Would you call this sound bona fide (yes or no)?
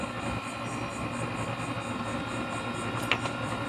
yes